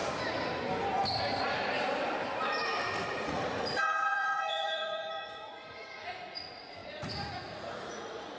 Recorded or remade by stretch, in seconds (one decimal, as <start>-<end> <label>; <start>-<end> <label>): 0.0-3.1 recorded; 3.1-8.4 remade